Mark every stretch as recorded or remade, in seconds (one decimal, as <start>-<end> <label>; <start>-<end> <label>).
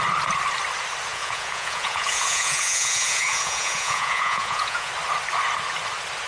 0.0-1.1 recorded; 1.1-4.9 remade; 4.9-6.3 recorded